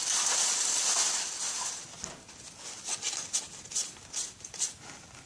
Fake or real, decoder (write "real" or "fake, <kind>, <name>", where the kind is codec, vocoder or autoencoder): real